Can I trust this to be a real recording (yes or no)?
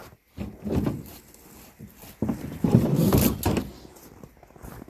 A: yes